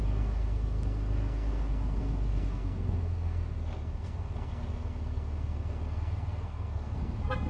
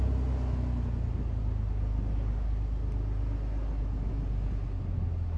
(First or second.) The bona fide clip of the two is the second